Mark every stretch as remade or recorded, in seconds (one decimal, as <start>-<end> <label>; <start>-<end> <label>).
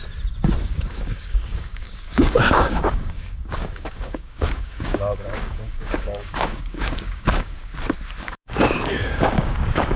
0.0-0.6 recorded; 0.6-7.7 remade; 7.7-8.2 recorded; 8.2-10.0 remade